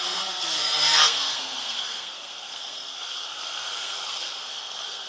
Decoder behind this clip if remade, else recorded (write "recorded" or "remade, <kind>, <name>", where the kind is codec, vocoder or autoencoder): remade, codec, SNAC